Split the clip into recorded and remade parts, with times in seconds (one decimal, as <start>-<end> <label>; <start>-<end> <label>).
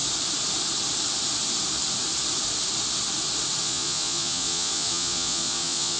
0.0-3.6 recorded; 3.6-6.0 remade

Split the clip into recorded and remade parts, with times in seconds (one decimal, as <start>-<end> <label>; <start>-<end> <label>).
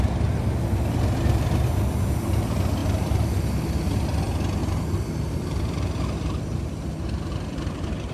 0.0-2.8 recorded; 2.8-3.6 remade; 3.6-4.6 recorded; 4.6-8.1 remade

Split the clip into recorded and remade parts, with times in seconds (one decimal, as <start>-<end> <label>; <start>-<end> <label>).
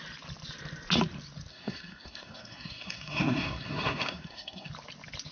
0.0-1.5 recorded; 1.5-4.7 remade; 4.7-5.3 recorded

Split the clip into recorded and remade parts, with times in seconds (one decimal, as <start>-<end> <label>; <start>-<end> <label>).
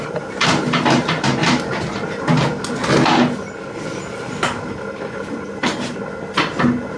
0.0-7.0 recorded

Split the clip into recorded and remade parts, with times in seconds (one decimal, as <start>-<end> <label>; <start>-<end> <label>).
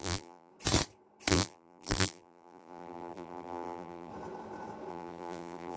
0.0-0.5 remade; 0.5-1.3 recorded; 1.3-4.1 remade; 4.1-4.9 recorded; 4.9-5.8 remade